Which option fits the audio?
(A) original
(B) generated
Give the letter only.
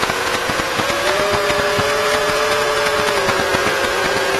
B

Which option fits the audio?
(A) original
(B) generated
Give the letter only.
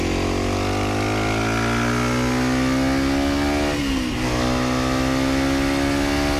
A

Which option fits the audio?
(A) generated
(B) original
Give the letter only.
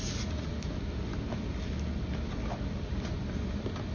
B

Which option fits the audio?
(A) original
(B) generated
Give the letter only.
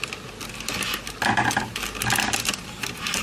A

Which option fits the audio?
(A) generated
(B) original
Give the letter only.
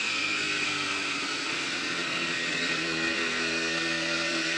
A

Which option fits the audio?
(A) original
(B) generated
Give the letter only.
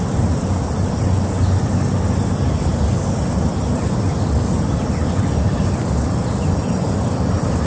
A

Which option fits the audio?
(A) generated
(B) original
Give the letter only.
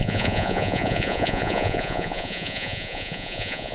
A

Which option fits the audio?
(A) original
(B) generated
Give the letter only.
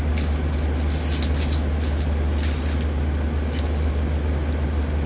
A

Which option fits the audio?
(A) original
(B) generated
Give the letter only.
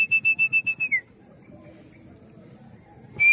A